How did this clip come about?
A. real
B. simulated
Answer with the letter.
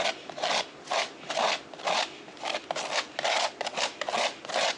A